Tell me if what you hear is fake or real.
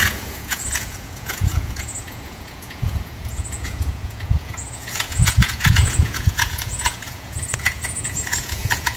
fake